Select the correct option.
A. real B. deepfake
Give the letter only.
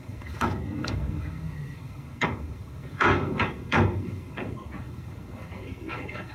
B